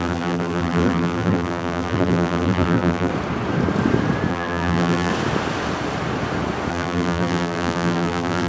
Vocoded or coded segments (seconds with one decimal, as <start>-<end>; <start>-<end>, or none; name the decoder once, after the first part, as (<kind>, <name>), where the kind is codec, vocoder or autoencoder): 0.0-3.1 (vocoder, BigVGAN v2); 4.3-5.1; 6.7-8.5